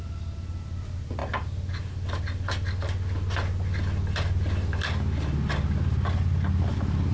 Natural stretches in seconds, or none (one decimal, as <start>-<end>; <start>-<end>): 0.0-7.1